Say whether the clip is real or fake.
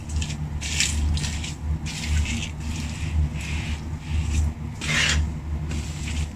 real